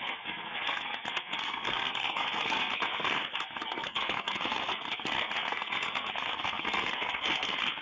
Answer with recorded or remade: remade